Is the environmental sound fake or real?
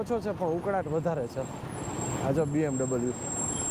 real